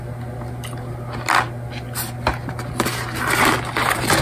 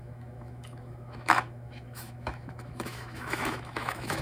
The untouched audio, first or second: first